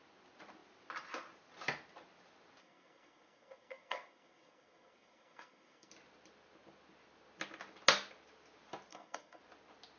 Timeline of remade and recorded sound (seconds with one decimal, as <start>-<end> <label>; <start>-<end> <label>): 0.0-2.6 recorded; 2.6-5.9 remade; 5.9-8.9 recorded; 8.9-9.4 remade; 9.4-10.0 recorded